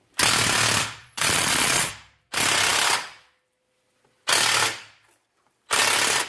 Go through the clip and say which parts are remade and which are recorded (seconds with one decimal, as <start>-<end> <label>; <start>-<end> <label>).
0.0-1.0 recorded; 1.0-1.9 remade; 1.9-6.3 recorded